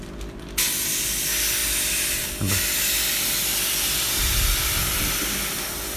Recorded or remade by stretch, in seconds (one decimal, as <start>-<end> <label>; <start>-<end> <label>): 0.0-6.0 recorded